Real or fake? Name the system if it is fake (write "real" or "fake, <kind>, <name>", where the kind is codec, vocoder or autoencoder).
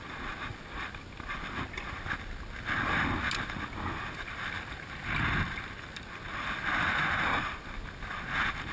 real